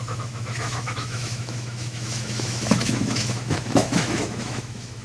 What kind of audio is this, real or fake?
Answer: fake